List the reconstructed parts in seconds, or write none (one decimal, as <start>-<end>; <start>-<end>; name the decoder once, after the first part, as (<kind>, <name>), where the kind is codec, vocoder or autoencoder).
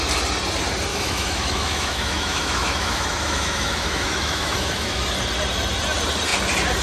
0.9-5.0 (autoencoder, DAC-VAE)